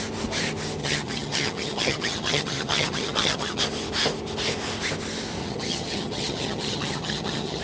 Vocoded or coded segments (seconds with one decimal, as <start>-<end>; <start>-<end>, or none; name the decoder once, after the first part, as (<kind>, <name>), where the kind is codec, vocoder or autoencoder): 0.8-3.6 (vocoder, HiFi-GAN); 5.4-7.6